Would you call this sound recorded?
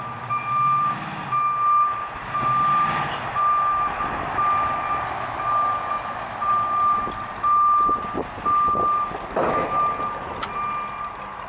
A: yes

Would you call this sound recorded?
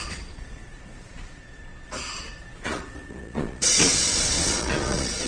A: no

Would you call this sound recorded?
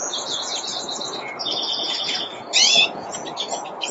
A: no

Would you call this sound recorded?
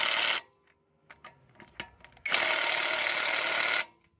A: yes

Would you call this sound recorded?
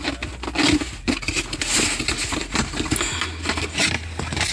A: yes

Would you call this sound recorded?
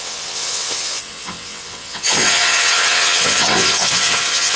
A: no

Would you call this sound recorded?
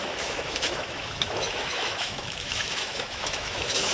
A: no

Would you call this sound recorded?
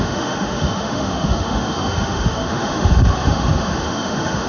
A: no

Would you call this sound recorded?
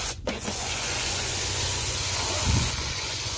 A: no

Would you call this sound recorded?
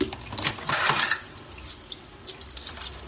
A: yes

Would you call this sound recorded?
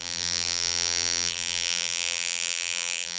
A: no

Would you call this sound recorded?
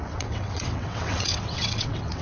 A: no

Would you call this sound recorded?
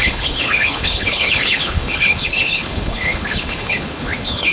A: no